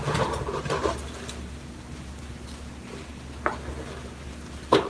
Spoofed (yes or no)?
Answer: no